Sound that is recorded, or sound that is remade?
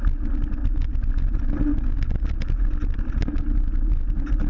recorded